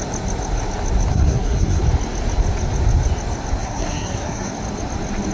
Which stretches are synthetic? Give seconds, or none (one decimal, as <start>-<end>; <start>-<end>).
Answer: 1.1-1.8; 3.6-4.5